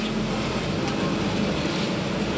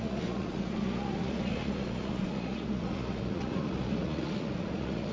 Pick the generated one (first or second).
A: second